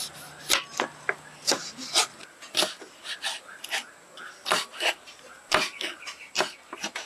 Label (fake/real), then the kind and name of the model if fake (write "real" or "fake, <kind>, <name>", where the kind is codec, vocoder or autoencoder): real